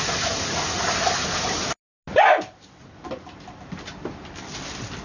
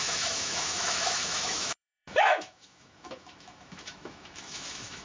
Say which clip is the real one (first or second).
first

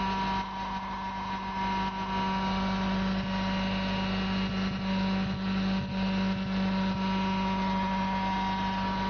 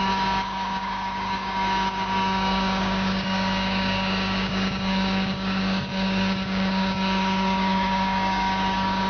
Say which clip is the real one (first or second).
first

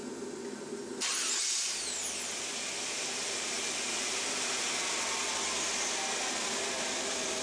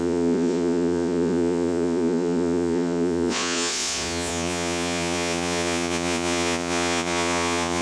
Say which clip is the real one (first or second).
first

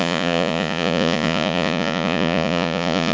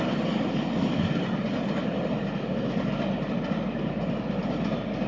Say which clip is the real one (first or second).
second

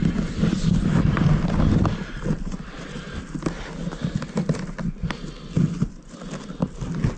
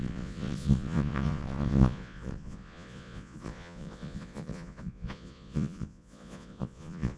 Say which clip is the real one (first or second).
first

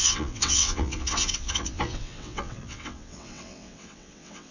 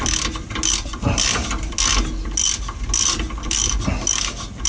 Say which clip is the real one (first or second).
second